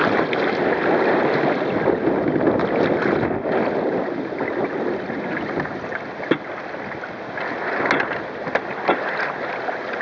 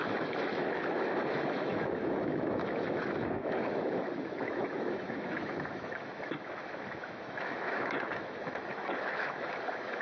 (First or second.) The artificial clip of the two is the second